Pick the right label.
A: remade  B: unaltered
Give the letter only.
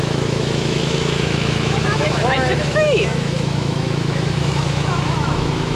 A